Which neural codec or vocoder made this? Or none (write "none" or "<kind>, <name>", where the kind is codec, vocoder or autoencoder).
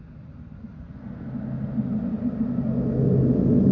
none